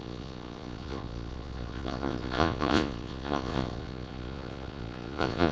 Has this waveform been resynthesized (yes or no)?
yes